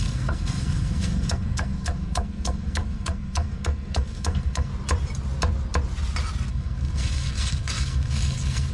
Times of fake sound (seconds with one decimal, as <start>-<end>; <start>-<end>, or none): 0.0-4.7; 6.5-8.7